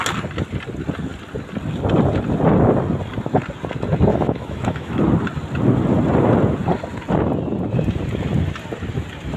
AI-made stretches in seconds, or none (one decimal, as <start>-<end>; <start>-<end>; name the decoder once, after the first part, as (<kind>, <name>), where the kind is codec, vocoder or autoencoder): 4.1-5.0 (autoencoder, DAC-VAE)